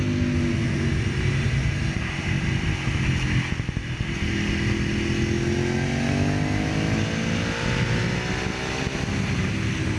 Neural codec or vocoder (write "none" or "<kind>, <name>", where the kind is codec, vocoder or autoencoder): none